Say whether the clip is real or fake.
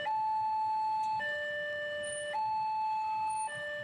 real